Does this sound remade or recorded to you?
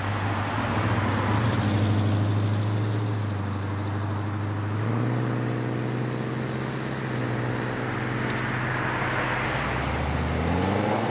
recorded